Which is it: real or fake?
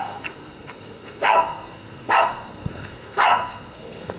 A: fake